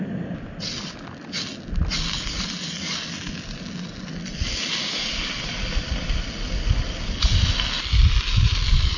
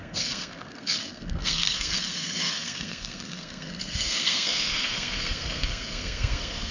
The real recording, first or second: first